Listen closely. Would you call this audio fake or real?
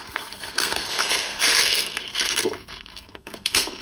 fake